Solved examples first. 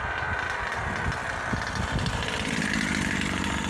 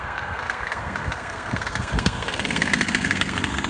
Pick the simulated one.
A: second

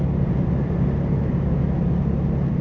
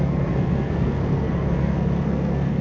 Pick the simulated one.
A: second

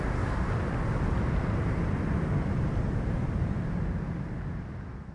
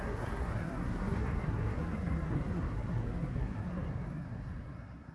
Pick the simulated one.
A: second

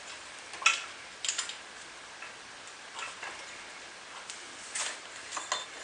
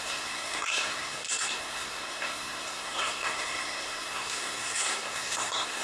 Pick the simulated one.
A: second